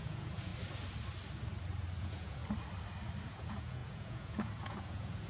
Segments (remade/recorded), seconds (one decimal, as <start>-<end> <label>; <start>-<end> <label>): 0.0-0.5 remade; 0.5-2.0 recorded; 2.0-2.4 remade; 2.4-3.2 recorded; 3.2-5.3 remade